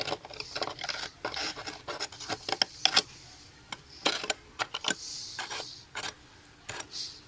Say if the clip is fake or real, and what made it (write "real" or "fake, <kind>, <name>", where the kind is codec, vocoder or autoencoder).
real